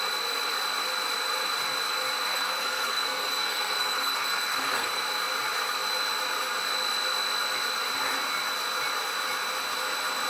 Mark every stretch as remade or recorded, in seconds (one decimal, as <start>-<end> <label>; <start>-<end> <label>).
0.0-2.3 recorded; 2.3-5.0 remade; 5.0-10.3 recorded